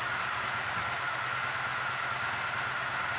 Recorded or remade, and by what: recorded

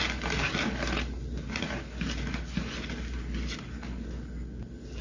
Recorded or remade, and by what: recorded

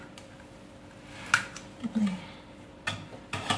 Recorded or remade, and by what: recorded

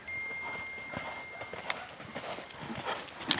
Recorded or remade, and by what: recorded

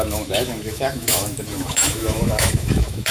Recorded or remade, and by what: remade, autoencoder, DAC-VAE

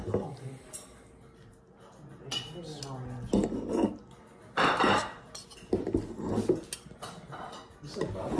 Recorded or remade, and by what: recorded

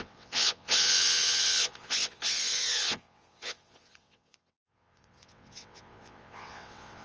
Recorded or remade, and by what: remade, vocoder, WaveNeXt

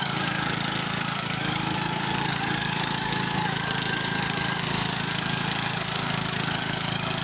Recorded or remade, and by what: remade, codec, DAC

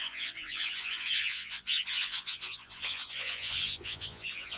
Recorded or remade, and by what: remade, vocoder, Vocos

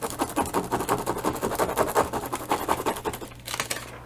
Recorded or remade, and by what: recorded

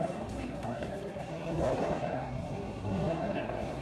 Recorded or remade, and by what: remade, codec, SNAC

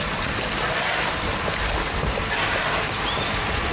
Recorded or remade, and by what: recorded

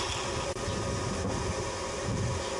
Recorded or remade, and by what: recorded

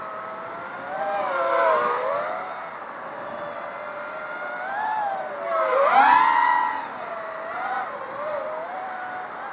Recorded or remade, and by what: recorded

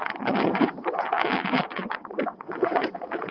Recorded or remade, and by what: remade, vocoder, WaveNeXt